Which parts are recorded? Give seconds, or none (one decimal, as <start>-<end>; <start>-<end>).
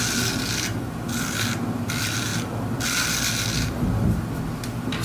0.0-5.0